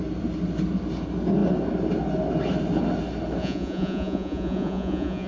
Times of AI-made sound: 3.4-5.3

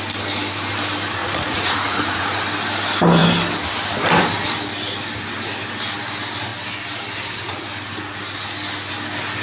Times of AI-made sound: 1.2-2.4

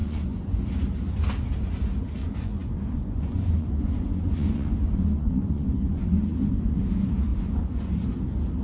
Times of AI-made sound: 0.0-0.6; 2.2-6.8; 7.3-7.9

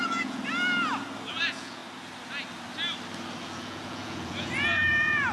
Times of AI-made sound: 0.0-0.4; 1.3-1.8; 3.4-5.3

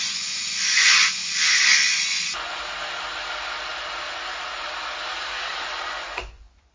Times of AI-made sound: 0.0-1.2; 1.9-2.6; 5.5-6.7

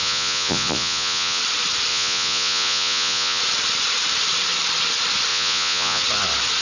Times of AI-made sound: 0.0-1.4; 1.9-3.4; 5.3-6.0

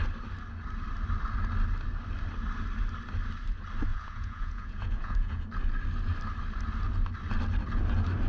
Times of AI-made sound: 3.9-5.4